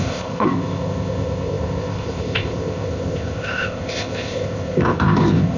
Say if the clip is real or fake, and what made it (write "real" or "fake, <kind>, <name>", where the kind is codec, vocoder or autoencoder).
fake, codec, ZipCodec